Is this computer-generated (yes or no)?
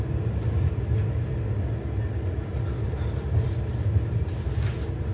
no